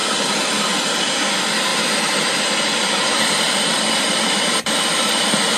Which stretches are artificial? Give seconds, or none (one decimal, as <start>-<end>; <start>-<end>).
0.0-0.5; 1.7-5.1